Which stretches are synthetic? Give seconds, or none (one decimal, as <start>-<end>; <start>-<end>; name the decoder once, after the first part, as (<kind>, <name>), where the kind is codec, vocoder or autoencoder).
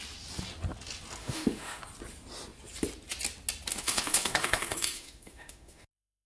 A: 1.2-1.8 (autoencoder, DAC-VAE); 3.7-6.3